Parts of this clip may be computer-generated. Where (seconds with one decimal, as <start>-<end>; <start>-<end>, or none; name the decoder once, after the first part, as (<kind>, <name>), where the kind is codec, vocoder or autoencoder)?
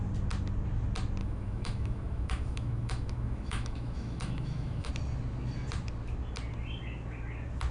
1.2-4.9 (autoencoder, DAC-VAE)